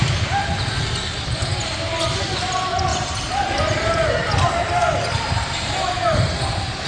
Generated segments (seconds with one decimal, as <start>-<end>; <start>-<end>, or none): none